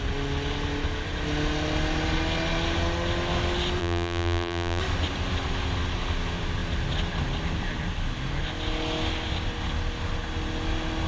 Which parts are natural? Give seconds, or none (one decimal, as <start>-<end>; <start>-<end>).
0.0-3.8; 4.8-11.1